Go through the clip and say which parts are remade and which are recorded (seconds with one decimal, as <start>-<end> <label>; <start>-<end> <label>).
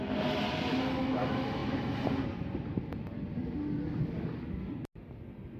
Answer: 0.0-1.6 recorded; 1.6-3.1 remade; 3.1-5.6 recorded